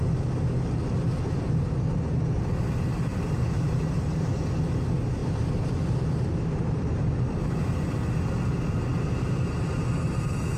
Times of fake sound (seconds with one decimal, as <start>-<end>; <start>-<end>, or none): 3.1-4.3